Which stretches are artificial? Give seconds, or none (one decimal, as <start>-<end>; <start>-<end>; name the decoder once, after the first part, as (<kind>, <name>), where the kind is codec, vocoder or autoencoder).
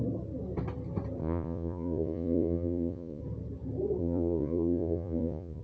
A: 1.2-3.2 (vocoder, Vocos); 4.0-5.6